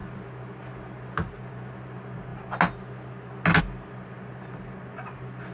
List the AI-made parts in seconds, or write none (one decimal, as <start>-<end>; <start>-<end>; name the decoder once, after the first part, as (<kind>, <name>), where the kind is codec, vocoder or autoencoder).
none